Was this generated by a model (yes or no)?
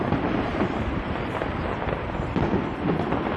no